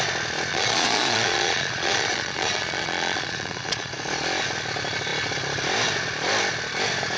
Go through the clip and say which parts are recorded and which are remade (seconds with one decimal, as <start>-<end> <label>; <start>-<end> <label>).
0.0-0.5 recorded; 0.5-3.9 remade; 3.9-7.2 recorded